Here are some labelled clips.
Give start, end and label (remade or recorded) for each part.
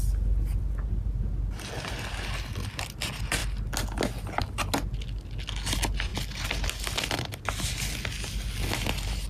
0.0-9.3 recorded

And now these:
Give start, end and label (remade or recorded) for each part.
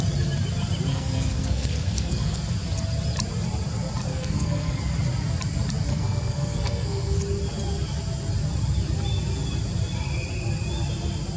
0.0-0.9 recorded; 0.9-2.4 remade; 2.4-4.1 recorded; 4.1-4.8 remade; 4.8-5.9 recorded; 5.9-7.2 remade; 7.2-11.4 recorded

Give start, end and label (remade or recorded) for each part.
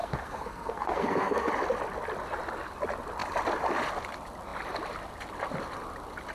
0.0-1.5 remade; 1.5-6.3 recorded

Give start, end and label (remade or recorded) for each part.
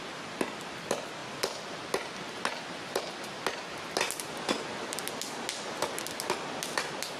0.0-7.2 recorded